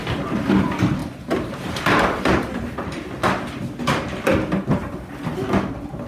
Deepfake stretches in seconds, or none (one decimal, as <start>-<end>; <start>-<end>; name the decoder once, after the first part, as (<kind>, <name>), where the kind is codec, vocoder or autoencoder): 1.0-2.6 (vocoder, BigVGAN v2)